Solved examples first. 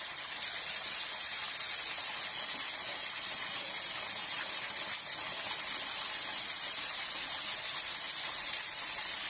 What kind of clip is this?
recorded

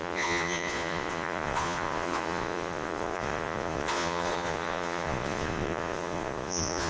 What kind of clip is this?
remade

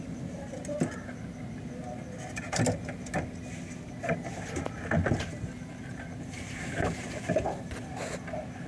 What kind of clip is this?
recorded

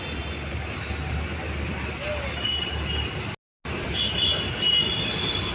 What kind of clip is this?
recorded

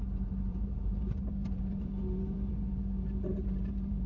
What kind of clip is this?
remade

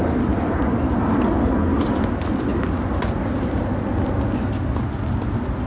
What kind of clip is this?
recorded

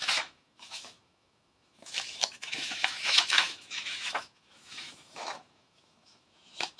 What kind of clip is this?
remade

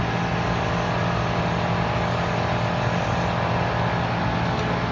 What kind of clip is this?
recorded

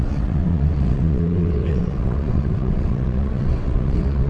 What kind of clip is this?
remade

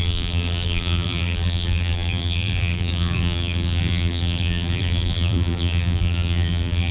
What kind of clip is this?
remade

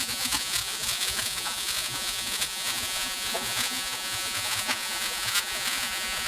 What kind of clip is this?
remade